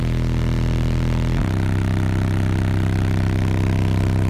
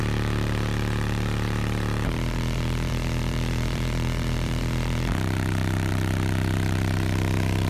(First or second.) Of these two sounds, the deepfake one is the second